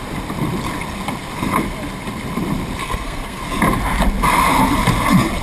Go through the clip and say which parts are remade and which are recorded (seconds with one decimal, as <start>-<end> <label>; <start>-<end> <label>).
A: 0.0-2.8 recorded; 2.8-3.4 remade; 3.4-5.4 recorded